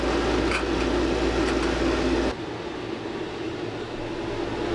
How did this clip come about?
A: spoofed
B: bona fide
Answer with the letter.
B